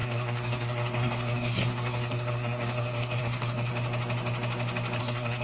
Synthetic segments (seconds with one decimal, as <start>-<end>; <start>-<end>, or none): 0.0-3.7; 5.0-5.4